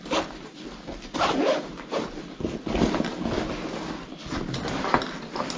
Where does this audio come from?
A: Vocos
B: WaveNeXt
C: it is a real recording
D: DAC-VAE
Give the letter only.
C